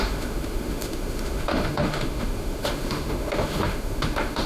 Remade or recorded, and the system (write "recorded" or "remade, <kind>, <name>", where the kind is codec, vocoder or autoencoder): remade, autoencoder, DAC-VAE